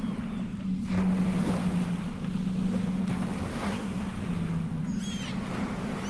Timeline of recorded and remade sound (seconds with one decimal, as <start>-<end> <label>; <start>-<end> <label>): 0.0-3.5 recorded; 3.5-4.1 remade; 4.1-6.1 recorded